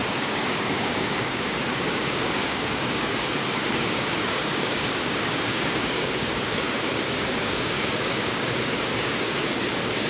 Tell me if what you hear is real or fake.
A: fake